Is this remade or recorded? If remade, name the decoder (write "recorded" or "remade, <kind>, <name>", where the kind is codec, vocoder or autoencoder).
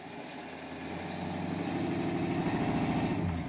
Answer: recorded